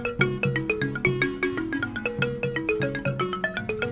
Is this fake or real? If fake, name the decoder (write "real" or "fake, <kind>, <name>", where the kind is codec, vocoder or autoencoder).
real